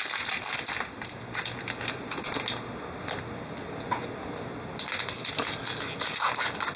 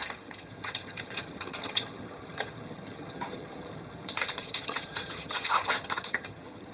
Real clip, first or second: first